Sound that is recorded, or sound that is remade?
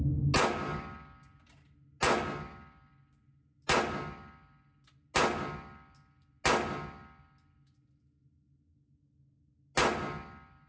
recorded